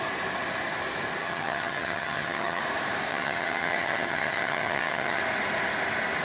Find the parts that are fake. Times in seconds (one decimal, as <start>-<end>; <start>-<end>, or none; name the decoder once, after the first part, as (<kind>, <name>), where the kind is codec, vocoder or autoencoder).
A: 1.2-2.6 (vocoder, HiFi-GAN); 3.1-5.2